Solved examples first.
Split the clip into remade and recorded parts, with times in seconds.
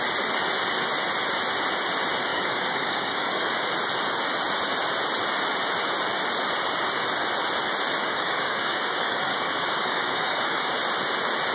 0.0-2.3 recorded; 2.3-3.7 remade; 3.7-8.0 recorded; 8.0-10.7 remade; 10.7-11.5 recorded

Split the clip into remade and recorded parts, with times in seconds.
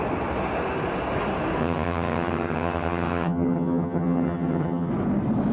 0.0-1.6 recorded; 1.6-4.9 remade; 4.9-5.5 recorded